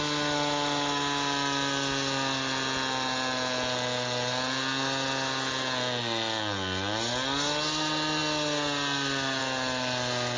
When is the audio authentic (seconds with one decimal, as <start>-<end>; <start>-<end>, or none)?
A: 0.0-10.4